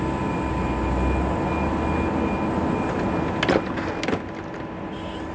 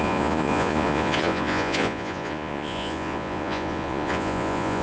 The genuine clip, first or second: first